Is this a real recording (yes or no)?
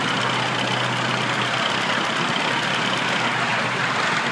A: yes